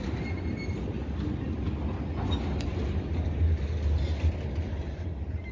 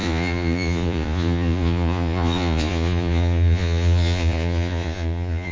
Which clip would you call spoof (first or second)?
second